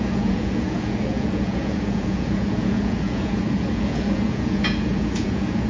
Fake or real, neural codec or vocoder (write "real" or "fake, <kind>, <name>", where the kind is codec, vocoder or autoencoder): fake, vocoder, Vocos